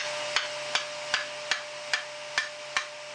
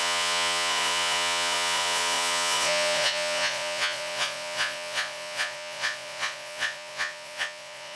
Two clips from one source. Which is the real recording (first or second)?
first